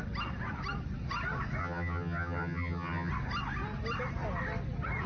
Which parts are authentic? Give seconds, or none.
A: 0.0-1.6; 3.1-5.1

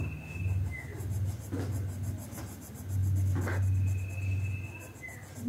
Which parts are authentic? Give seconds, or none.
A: 0.0-5.5

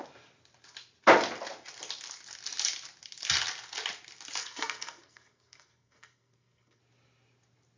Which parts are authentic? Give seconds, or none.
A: 0.0-4.4; 6.8-7.8

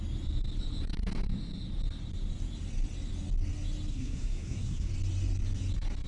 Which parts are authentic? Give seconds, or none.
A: 0.0-3.9; 4.9-6.1

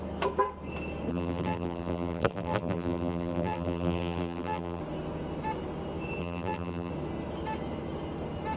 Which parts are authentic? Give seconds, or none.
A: 0.0-1.1; 4.8-6.2; 6.9-8.6

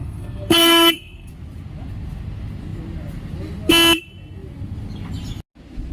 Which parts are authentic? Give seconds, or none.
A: 1.3-5.9

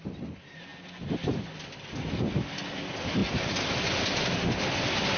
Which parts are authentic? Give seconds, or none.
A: 0.0-5.2

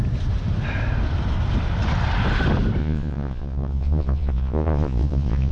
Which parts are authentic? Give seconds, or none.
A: 0.0-2.8